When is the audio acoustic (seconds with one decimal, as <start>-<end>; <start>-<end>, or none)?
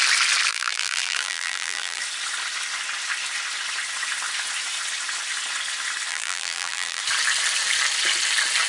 0.0-0.5; 2.0-6.1; 7.0-8.7